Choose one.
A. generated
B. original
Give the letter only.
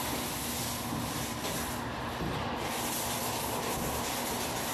B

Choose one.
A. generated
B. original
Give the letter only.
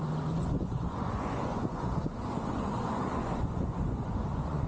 A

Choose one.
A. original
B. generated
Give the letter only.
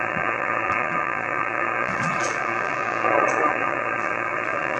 B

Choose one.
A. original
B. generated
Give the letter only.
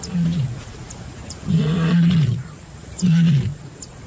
B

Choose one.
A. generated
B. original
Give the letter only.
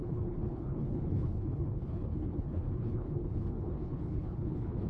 A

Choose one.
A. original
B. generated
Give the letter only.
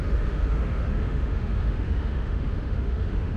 B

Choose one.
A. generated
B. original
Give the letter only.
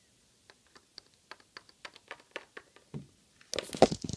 B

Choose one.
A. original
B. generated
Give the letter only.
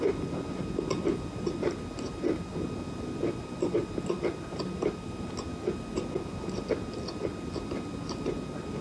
A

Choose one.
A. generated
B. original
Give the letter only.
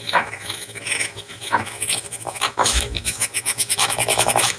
A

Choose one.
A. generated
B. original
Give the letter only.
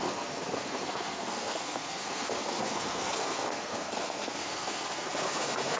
A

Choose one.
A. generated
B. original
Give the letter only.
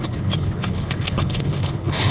A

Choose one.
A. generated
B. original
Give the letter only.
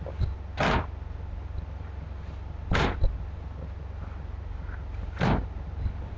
B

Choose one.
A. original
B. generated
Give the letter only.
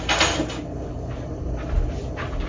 A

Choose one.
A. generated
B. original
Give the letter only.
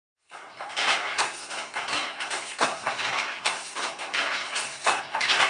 A